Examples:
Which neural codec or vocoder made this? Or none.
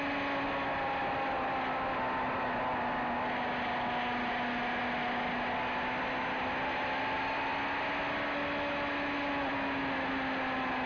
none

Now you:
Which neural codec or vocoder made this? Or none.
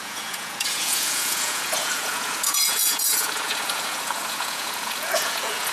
vocoder, Vocos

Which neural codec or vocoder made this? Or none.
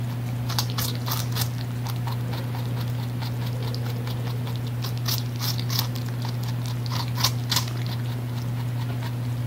none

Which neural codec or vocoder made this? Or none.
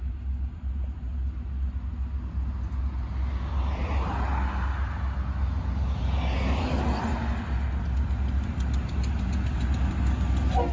none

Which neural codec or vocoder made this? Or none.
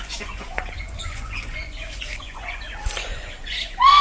vocoder, Vocos